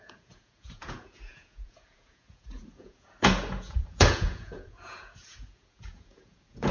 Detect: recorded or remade remade